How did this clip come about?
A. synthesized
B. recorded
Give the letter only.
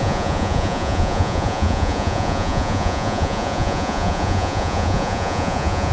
A